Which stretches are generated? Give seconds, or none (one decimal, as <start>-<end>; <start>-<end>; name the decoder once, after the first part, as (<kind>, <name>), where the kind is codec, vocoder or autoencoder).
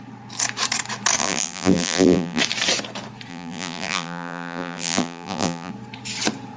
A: 1.2-2.4 (vocoder, BigVGAN v2); 3.3-5.7